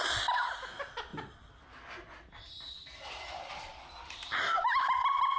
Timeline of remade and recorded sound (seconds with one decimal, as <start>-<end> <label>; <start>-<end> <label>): 0.0-5.4 recorded